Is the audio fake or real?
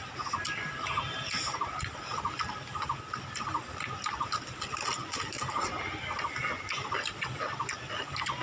real